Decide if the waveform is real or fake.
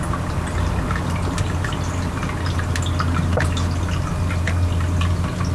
real